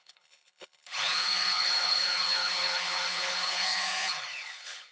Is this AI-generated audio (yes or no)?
yes